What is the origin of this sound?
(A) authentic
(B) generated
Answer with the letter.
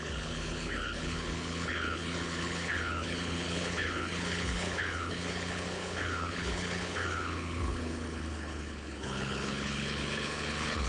B